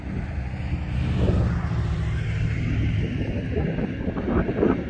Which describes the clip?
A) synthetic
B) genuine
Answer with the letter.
B